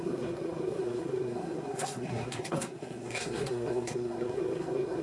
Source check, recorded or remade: remade